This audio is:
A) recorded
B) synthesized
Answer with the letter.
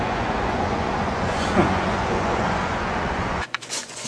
B